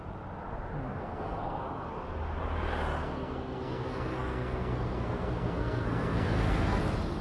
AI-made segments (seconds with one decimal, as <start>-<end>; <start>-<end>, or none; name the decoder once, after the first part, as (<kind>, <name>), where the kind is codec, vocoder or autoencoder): 1.0-1.9 (codec, SNAC); 3.0-6.8